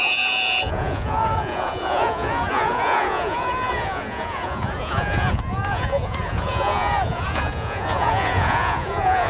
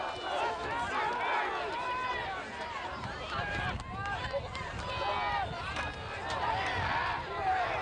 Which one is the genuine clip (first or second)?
second